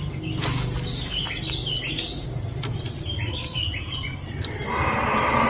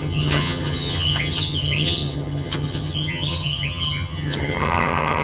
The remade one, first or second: second